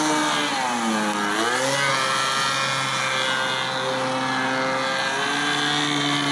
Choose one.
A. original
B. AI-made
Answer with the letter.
A